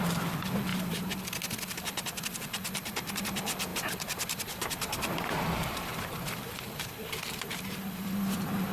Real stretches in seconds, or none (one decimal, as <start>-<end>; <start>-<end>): 0.0-0.7; 1.2-3.7